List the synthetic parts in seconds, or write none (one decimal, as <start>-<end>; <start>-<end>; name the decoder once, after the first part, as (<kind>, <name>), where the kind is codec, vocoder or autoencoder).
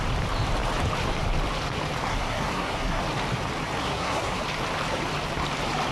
2.1-3.0 (codec, SNAC); 3.8-4.4